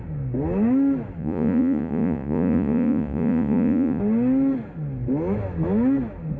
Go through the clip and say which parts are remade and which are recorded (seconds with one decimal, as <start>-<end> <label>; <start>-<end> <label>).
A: 0.0-1.2 recorded; 1.2-4.0 remade; 4.0-6.4 recorded